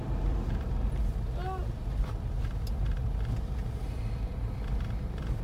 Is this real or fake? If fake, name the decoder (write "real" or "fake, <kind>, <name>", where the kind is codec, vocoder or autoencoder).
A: real